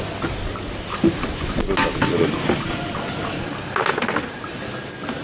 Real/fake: real